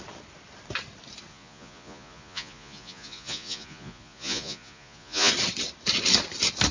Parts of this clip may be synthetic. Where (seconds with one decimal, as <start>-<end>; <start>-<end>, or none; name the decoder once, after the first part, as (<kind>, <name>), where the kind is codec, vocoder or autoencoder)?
1.3-5.3 (vocoder, Vocos)